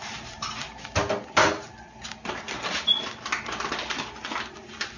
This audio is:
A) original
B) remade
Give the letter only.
A